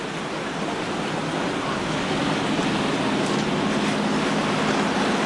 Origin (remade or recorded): recorded